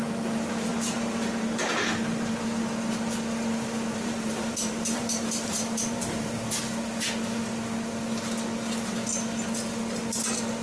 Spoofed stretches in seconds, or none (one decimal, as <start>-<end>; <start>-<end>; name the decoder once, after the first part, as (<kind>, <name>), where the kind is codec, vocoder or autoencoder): 0.7-1.4 (vocoder, BigVGAN v2); 3.9-6.5